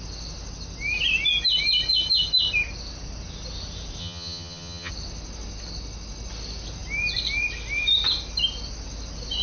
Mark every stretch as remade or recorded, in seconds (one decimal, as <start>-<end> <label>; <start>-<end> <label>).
0.0-4.0 recorded; 4.0-4.9 remade; 4.9-9.4 recorded